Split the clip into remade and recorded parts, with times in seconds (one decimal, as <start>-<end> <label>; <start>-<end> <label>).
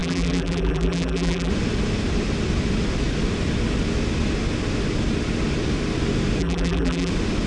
0.0-1.5 remade; 1.5-6.4 recorded; 6.4-7.1 remade; 7.1-7.5 recorded